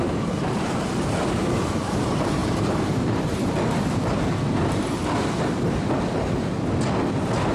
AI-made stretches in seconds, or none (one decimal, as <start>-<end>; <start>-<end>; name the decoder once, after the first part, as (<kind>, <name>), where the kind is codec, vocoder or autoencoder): 0.0-5.0 (vocoder, BigVGAN v2)

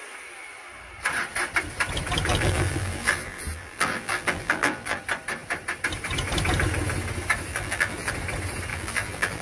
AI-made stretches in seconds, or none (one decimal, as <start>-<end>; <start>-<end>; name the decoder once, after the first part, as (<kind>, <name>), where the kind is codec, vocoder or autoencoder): 2.3-5.0 (vocoder, BigVGAN v2); 7.5-8.1; 8.7-9.4